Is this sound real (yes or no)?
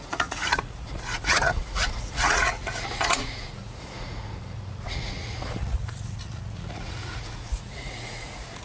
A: no